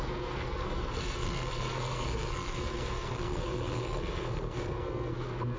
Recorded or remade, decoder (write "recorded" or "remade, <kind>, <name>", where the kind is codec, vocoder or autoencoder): remade, codec, SNAC